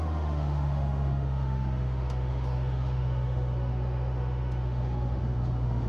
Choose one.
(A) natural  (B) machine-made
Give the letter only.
B